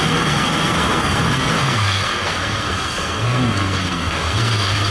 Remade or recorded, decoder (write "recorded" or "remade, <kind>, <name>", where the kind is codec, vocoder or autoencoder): remade, codec, SNAC